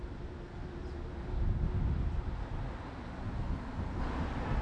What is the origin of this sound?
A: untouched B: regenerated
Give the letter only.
A